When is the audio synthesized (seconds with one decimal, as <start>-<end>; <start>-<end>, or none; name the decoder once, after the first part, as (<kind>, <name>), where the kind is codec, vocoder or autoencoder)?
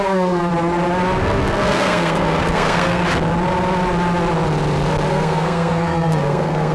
0.0-0.5 (codec, SNAC); 1.2-3.0; 5.1-6.7